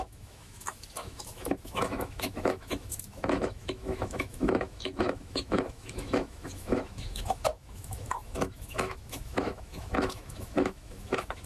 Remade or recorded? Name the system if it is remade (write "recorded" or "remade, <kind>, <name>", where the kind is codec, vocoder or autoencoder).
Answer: remade, autoencoder, DAC-VAE